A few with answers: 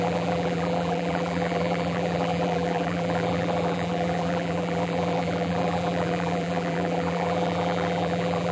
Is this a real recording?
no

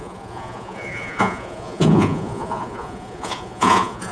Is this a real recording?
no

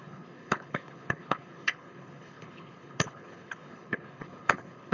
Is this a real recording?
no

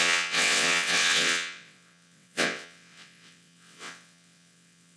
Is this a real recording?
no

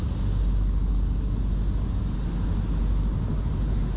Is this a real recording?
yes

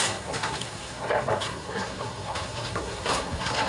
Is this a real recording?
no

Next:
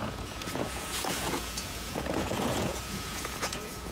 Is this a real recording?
no